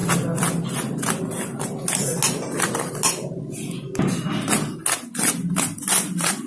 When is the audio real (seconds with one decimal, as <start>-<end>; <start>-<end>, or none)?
0.0-6.5